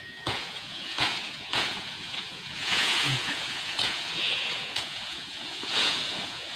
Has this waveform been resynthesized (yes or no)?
yes